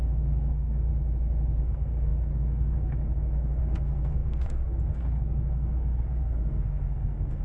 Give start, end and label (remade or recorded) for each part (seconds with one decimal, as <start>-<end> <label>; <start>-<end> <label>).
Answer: 0.0-0.9 remade; 0.9-1.6 recorded; 1.6-7.4 remade